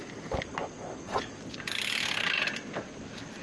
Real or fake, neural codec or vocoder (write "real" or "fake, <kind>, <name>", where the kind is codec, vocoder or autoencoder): real